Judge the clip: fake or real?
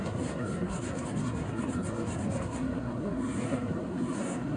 fake